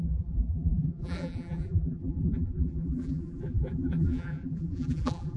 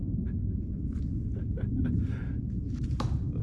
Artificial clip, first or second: first